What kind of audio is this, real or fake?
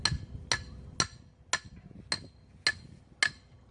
real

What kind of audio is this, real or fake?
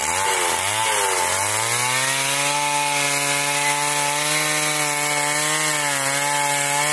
real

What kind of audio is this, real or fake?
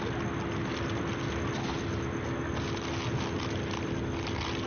real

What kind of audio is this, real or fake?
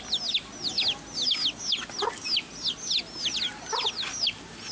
real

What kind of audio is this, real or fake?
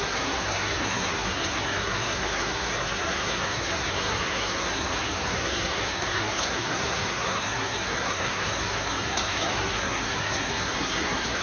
fake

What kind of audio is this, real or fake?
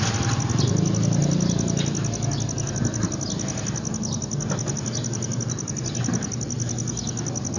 real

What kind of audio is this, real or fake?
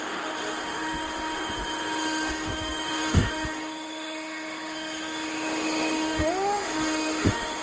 fake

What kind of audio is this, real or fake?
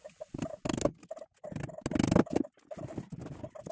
real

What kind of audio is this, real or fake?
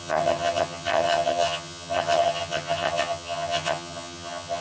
fake